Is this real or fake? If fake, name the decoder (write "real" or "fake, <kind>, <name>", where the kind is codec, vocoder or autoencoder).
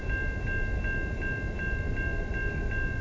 real